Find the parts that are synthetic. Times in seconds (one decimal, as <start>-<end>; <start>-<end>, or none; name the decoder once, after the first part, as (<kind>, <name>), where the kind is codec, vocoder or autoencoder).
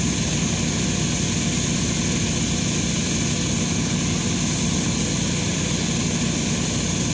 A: none